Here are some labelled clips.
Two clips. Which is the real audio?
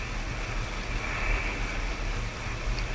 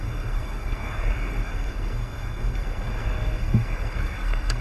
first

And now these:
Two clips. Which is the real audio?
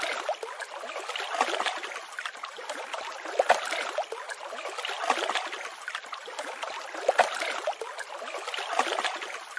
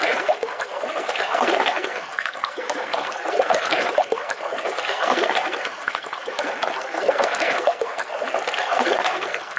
first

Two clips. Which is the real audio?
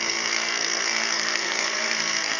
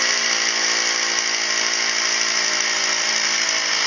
second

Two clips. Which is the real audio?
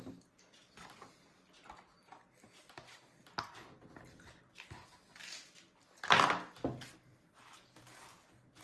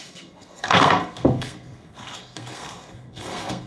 first